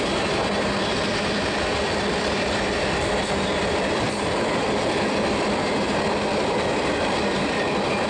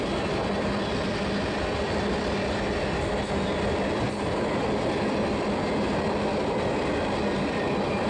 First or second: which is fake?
first